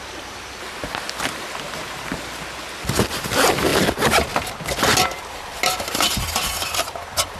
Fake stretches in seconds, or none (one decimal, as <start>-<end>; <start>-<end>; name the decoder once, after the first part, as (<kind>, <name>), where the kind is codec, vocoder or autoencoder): none